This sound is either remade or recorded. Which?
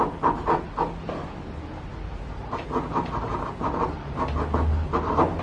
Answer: recorded